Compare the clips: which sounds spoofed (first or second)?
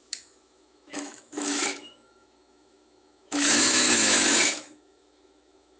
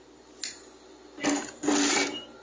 first